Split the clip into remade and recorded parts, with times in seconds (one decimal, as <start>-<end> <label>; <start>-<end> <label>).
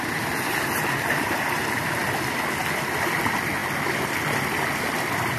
0.0-5.4 recorded